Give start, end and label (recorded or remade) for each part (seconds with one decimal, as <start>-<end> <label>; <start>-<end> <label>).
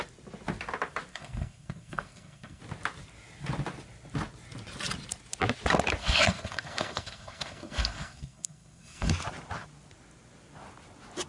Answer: 0.0-1.1 recorded; 1.1-2.6 remade; 2.6-6.0 recorded; 6.0-9.1 remade; 9.1-11.3 recorded